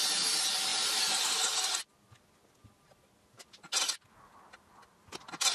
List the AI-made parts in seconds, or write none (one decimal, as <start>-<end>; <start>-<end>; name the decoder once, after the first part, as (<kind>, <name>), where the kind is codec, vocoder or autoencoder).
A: none